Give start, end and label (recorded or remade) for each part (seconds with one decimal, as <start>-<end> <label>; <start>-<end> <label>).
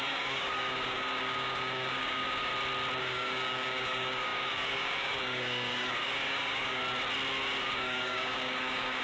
0.0-2.5 remade; 2.5-3.0 recorded; 3.0-6.8 remade; 6.8-7.6 recorded; 7.6-9.0 remade